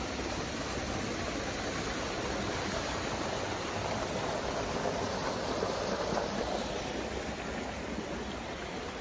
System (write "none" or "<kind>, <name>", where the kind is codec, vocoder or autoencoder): none